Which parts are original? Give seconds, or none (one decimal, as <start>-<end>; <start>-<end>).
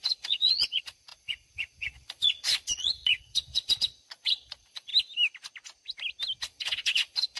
4.9-6.4